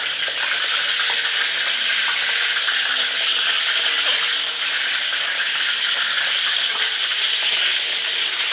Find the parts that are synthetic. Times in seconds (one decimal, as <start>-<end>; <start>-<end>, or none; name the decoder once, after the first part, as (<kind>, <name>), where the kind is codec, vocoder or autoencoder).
none